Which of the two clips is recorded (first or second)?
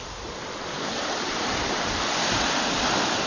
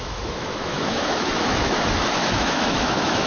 first